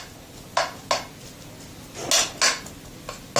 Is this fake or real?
real